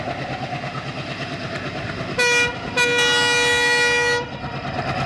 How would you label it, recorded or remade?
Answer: recorded